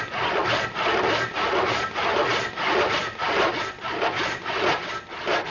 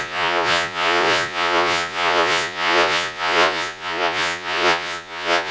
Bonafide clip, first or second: first